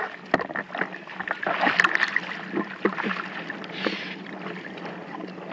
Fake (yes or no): no